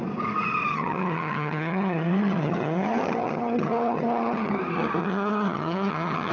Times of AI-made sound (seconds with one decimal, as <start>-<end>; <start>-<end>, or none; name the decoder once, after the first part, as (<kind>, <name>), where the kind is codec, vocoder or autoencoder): 0.7-4.5 (vocoder, HiFi-GAN); 5.0-6.3

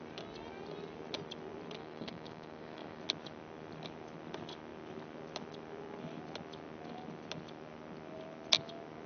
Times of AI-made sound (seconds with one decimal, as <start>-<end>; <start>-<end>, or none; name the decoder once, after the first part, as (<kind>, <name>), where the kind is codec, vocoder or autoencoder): 1.8-3.0 (codec, DAC)